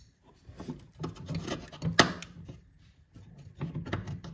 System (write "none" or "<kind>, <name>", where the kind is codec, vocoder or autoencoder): none